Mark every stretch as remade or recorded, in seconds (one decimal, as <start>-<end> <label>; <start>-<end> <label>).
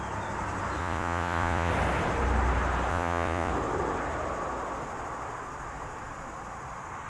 0.0-0.8 recorded; 0.8-1.7 remade; 1.7-2.9 recorded; 2.9-3.5 remade; 3.5-7.1 recorded